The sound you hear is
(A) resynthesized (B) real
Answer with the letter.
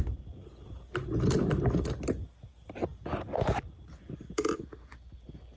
B